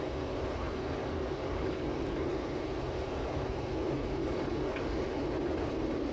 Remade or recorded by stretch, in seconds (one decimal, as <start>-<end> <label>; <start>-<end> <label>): 0.0-1.0 recorded; 1.0-2.3 remade; 2.3-4.2 recorded; 4.2-5.2 remade; 5.2-6.1 recorded